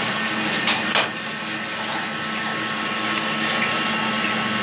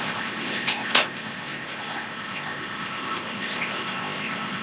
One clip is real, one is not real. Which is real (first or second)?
first